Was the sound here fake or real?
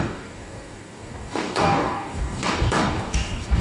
fake